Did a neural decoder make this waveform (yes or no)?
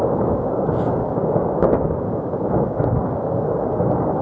yes